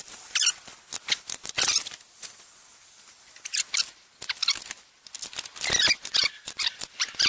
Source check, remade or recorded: recorded